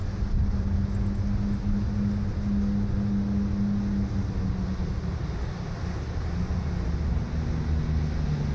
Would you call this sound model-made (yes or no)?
no